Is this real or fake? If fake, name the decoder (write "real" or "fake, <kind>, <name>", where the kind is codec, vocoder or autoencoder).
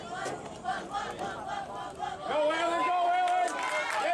real